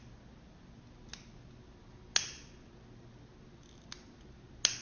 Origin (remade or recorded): recorded